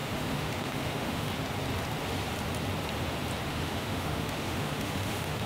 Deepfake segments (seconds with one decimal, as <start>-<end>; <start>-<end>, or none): 0.0-1.3; 3.5-5.5